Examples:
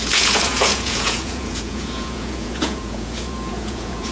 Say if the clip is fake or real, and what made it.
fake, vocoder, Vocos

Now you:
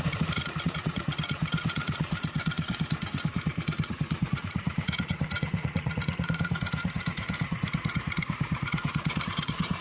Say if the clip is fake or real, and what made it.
fake, vocoder, Vocos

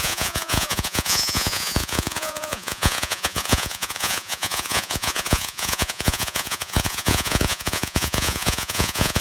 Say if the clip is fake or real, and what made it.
fake, vocoder, Vocos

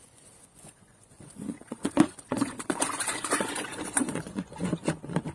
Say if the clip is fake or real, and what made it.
fake, vocoder, Vocos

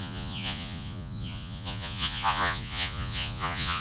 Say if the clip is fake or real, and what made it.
fake, vocoder, Vocos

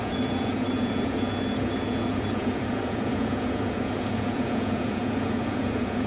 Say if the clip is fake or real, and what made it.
fake, vocoder, Vocos